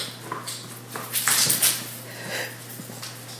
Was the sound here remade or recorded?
recorded